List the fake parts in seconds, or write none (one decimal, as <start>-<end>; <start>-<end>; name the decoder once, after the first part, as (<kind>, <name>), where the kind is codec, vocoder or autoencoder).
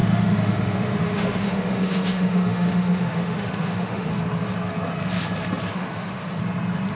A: 0.0-4.1 (autoencoder, DAC-VAE); 5.7-6.4